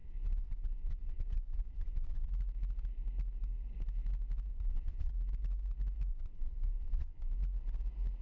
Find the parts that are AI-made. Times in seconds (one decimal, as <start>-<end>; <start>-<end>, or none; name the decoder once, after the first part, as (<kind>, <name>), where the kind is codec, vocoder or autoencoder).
0.0-2.3 (vocoder, Vocos); 4.5-5.1; 6.1-7.3